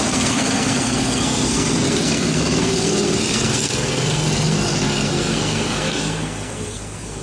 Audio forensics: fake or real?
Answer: fake